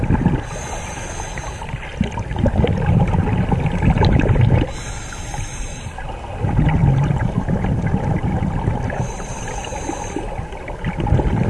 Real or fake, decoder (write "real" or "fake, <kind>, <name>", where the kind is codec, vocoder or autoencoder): real